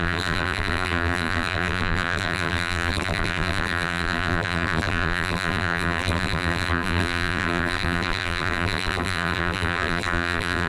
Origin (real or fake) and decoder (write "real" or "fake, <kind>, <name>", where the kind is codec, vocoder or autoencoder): fake, vocoder, BigVGAN v2